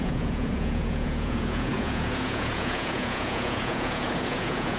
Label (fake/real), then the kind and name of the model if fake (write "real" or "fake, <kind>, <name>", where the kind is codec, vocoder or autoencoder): fake, vocoder, Vocos